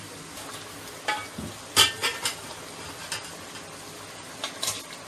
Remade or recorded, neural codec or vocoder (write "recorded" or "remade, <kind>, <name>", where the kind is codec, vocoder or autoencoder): recorded